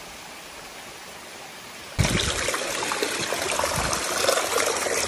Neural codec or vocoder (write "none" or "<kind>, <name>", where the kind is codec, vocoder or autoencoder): none